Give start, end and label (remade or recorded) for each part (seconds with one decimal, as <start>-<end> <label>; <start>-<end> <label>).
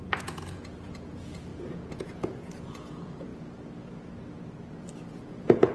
0.0-3.3 remade; 3.3-5.1 recorded; 5.1-5.7 remade